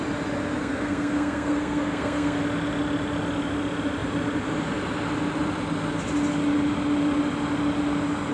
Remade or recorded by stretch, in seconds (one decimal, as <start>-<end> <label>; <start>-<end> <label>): 0.0-0.6 recorded; 0.6-2.4 remade; 2.4-8.3 recorded